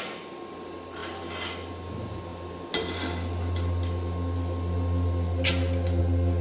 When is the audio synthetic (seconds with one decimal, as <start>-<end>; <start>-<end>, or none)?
none

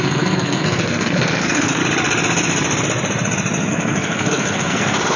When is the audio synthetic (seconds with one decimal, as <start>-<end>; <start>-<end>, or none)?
0.0-1.8; 3.7-5.2

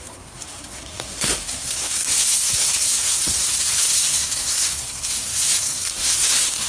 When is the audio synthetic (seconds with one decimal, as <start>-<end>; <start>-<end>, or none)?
0.0-6.7

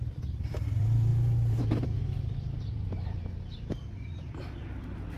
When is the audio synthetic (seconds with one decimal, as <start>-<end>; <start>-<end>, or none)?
none

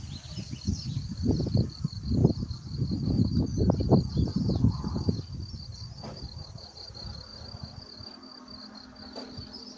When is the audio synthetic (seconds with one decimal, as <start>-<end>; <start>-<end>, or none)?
none